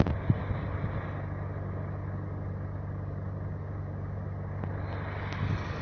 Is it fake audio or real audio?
real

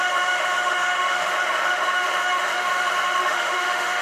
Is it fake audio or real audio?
fake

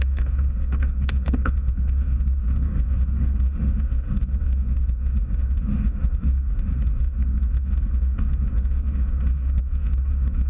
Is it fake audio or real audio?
fake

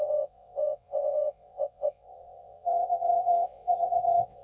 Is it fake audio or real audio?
fake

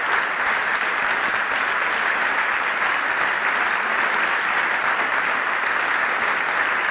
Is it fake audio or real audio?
real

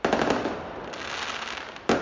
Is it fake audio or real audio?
real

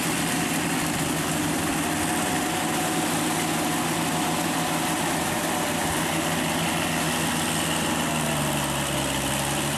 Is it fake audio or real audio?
real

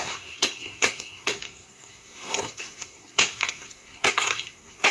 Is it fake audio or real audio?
fake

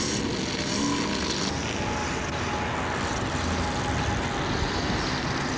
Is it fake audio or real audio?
real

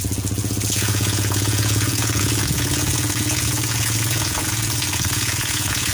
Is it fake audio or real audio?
fake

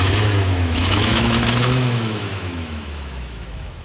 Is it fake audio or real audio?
fake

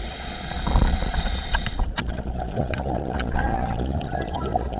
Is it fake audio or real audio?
fake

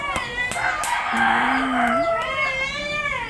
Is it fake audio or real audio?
real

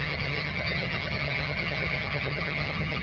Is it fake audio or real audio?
fake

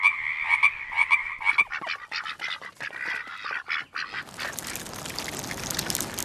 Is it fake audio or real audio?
real